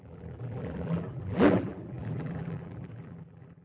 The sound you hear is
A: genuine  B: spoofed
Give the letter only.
B